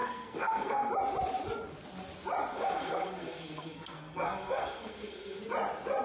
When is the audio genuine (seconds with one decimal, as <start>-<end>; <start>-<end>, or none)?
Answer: 0.9-2.5; 5.4-6.0